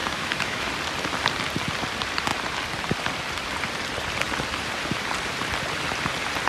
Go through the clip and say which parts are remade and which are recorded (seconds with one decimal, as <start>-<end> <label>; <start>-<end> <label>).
0.0-0.7 remade; 0.7-6.5 recorded